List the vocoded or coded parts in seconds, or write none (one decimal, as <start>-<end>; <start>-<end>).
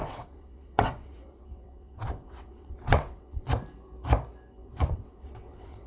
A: 0.0-3.5; 4.6-5.9